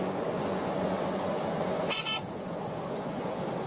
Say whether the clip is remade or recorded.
remade